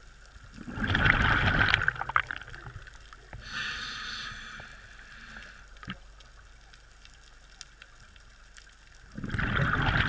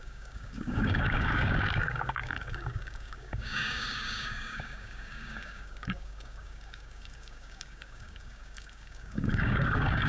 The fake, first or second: second